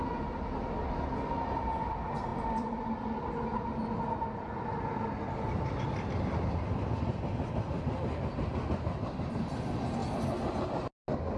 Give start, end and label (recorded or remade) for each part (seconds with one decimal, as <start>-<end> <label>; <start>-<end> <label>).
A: 0.0-2.3 recorded; 2.3-2.9 remade; 2.9-11.4 recorded